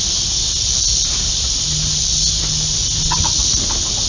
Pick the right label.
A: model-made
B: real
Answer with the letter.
B